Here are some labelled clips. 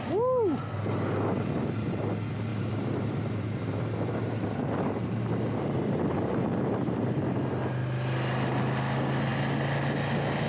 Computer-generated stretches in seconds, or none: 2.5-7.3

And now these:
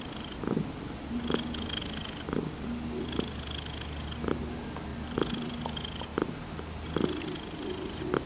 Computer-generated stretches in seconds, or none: 4.9-5.5

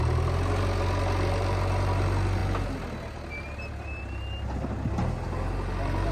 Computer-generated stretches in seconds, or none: none

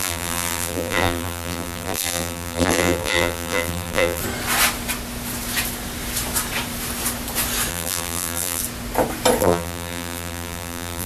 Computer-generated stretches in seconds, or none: 0.0-4.2; 7.7-8.6; 9.4-11.1